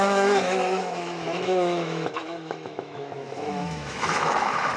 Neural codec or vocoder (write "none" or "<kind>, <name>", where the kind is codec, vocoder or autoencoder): autoencoder, DAC-VAE